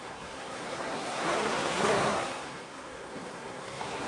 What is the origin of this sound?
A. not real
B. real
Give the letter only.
A